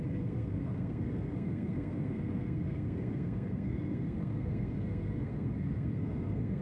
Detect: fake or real fake